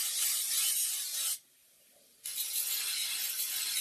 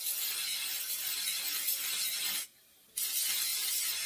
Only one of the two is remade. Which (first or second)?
first